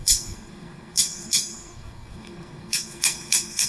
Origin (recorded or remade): remade